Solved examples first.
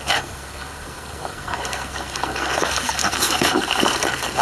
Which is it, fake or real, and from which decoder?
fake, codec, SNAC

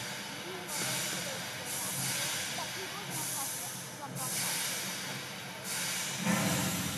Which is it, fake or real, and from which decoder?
real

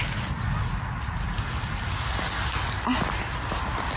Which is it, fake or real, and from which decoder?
real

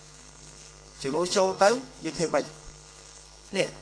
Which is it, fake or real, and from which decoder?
fake, codec, SNAC